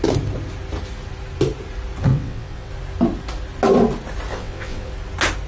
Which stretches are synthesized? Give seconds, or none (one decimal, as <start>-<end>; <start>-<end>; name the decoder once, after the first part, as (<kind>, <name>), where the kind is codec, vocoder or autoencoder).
2.1-2.7 (vocoder, WaveNeXt); 4.3-4.9